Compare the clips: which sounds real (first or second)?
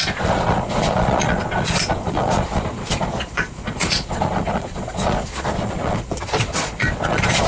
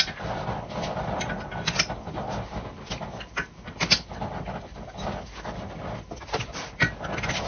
second